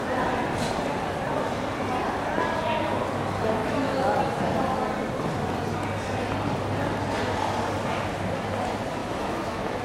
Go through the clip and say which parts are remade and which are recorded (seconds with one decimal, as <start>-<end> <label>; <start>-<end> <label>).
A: 0.0-3.6 recorded; 3.6-4.2 remade; 4.2-9.0 recorded; 9.0-9.8 remade